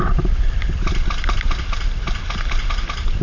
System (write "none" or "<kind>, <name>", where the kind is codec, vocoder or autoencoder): none